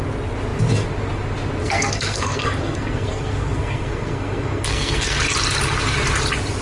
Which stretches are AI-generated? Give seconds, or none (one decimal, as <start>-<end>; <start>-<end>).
1.6-5.2